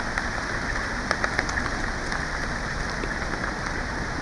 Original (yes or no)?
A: yes